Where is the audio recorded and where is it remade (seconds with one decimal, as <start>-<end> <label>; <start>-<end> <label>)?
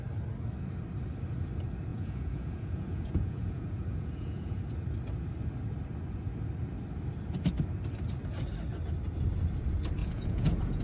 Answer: 0.0-1.9 recorded; 1.9-4.6 remade; 4.6-10.0 recorded; 10.0-10.8 remade